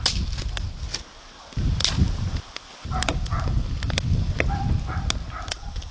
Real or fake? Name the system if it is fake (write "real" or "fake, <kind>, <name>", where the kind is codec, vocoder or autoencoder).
real